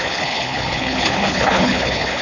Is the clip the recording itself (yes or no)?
no